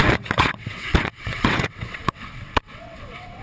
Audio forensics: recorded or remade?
remade